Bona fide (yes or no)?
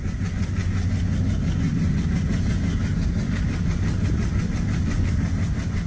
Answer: yes